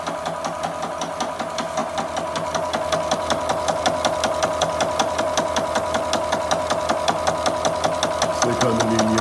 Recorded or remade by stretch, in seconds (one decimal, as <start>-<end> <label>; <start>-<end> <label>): 0.0-9.2 recorded